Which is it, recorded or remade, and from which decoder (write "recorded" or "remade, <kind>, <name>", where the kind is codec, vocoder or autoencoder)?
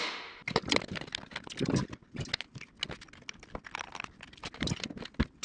recorded